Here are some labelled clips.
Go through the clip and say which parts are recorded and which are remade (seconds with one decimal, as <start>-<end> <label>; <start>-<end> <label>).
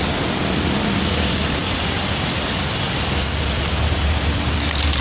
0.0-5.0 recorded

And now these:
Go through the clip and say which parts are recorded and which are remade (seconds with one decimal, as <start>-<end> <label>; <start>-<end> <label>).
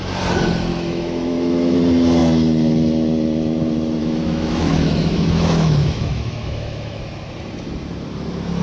0.0-0.7 recorded; 0.7-1.8 remade; 1.8-4.0 recorded; 4.0-7.0 remade; 7.0-8.6 recorded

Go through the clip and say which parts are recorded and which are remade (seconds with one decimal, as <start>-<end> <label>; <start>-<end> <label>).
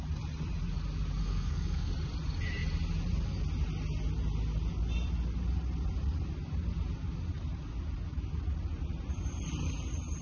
0.0-1.2 recorded; 1.2-1.9 remade; 1.9-10.2 recorded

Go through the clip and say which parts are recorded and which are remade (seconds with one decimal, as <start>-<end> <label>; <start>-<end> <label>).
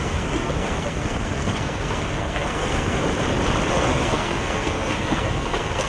0.0-3.0 remade; 3.0-3.7 recorded; 3.7-5.9 remade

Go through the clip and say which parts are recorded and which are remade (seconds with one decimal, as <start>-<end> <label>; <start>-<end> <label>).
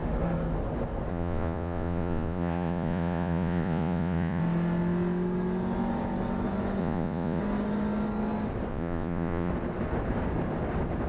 0.0-1.1 recorded; 1.1-4.4 remade; 4.4-6.8 recorded; 6.8-7.4 remade; 7.4-8.7 recorded; 8.7-9.5 remade; 9.5-11.1 recorded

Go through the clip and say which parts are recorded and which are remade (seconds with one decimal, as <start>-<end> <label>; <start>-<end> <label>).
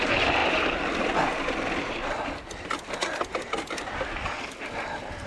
0.0-5.3 recorded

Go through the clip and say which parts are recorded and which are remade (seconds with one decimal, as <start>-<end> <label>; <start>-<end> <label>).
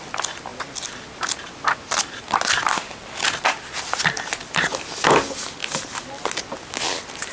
0.0-7.3 recorded